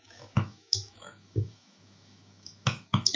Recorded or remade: remade